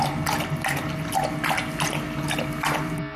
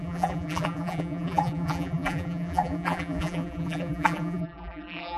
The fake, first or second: second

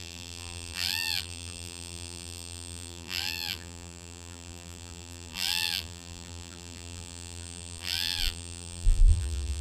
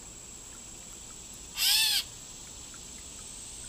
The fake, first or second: first